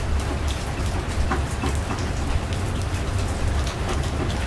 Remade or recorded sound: recorded